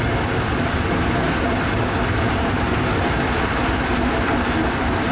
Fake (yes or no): no